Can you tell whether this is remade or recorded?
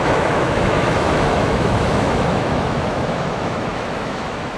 remade